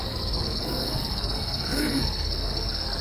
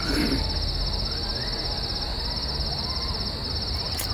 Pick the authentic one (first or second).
second